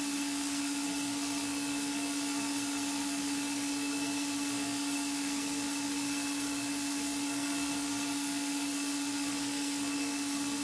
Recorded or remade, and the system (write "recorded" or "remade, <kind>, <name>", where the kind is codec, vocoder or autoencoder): remade, codec, SNAC